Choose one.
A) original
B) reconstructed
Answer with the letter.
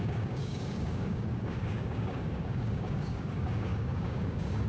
B